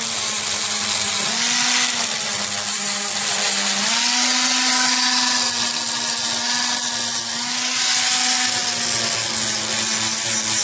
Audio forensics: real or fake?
real